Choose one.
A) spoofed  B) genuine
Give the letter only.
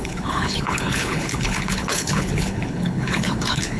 A